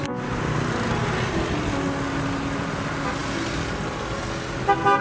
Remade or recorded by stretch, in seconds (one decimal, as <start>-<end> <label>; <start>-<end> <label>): 0.0-5.0 recorded